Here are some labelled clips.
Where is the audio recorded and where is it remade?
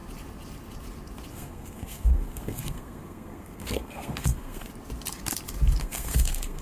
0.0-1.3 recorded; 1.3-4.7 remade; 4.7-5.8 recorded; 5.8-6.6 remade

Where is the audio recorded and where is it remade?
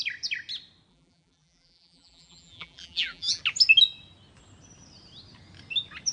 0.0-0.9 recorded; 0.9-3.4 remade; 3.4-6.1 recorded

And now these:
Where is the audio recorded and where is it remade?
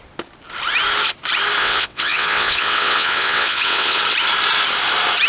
0.0-1.6 recorded; 1.6-4.0 remade; 4.0-5.3 recorded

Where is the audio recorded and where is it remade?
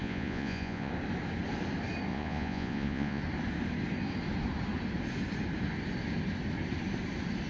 0.0-0.9 remade; 0.9-2.1 recorded; 2.1-3.2 remade; 3.2-7.5 recorded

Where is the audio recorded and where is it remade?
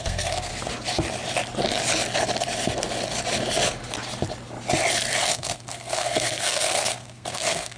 0.0-0.5 remade; 0.5-5.2 recorded; 5.2-7.8 remade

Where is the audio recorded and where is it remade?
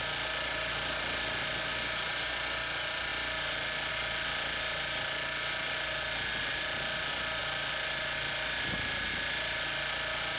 0.0-10.4 recorded